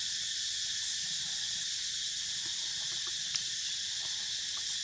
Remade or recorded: recorded